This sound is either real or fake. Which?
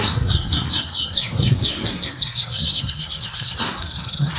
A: fake